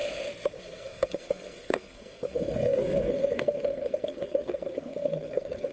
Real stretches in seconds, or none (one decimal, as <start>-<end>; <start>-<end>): 0.0-0.6